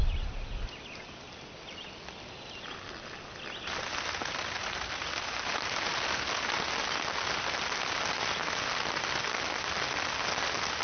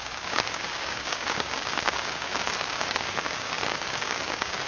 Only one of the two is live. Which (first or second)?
first